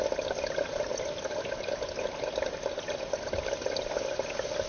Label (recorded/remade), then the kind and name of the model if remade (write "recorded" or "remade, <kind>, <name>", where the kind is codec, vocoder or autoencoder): recorded